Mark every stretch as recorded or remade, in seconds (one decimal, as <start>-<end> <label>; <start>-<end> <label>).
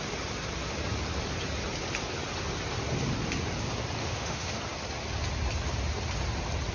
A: 0.0-4.0 recorded; 4.0-4.6 remade; 4.6-6.7 recorded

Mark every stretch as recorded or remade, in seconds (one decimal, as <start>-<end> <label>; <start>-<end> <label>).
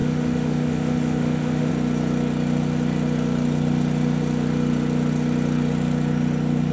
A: 0.0-1.7 remade; 1.7-6.7 recorded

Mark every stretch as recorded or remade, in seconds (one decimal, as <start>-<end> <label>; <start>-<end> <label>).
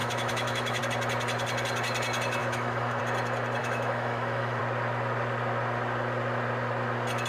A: 0.0-0.8 remade; 0.8-2.4 recorded; 2.4-3.0 remade; 3.0-3.6 recorded; 3.6-4.6 remade; 4.6-7.3 recorded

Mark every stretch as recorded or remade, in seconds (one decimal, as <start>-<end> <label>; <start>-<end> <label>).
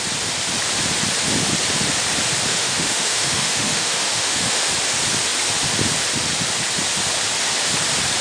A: 0.0-2.5 recorded; 2.5-4.7 remade; 4.7-8.2 recorded